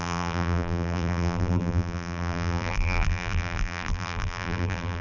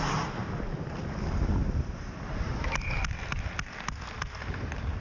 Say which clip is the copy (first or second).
first